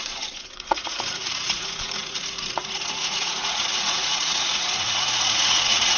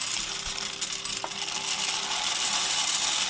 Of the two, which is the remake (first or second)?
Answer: first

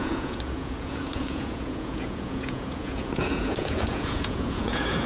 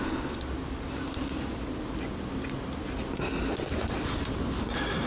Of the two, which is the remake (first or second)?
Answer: first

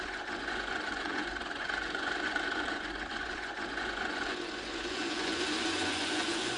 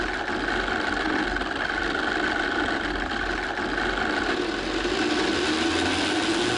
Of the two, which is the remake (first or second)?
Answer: first